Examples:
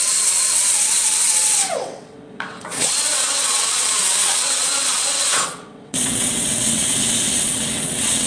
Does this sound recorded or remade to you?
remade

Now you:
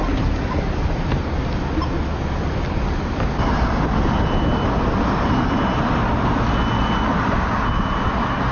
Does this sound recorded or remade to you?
recorded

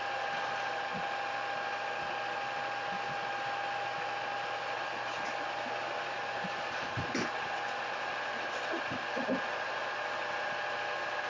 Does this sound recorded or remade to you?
recorded